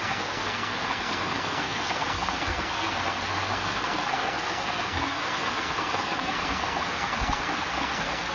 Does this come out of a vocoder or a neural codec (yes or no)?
yes